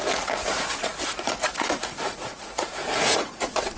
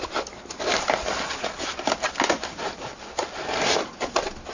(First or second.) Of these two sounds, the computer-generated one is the first